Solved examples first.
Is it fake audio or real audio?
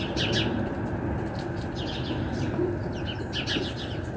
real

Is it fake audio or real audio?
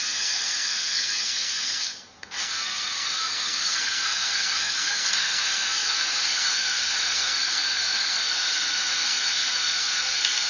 fake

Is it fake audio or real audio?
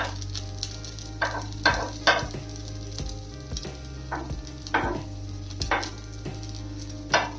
real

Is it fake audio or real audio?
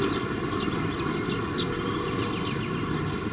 real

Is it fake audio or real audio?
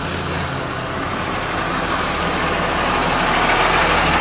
real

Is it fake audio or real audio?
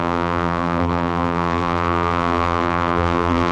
fake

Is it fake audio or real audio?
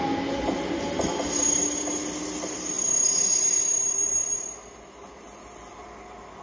real